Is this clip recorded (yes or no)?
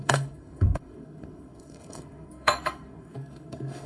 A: no